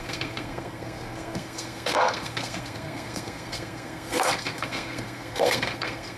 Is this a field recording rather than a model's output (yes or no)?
no